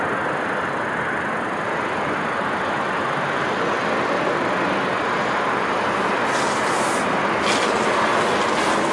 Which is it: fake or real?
real